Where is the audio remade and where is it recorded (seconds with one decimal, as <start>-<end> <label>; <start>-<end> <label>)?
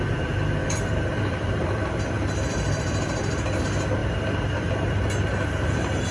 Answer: 0.0-0.6 recorded; 0.6-3.6 remade; 3.6-4.0 recorded; 4.0-4.9 remade; 4.9-6.1 recorded